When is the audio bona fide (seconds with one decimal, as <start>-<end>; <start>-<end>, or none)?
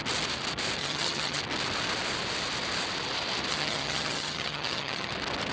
0.0-0.8; 1.4-3.5; 5.1-5.5